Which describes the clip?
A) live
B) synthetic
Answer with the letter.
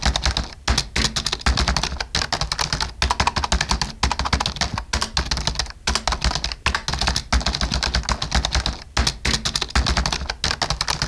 A